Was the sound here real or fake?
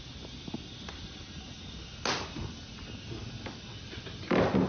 real